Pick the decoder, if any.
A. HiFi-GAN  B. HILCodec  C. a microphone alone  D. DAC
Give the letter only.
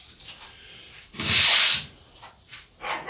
C